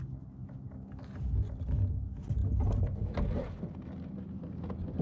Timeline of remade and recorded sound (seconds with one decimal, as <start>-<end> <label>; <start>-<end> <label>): 0.0-5.0 recorded